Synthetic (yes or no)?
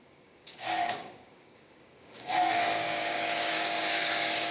yes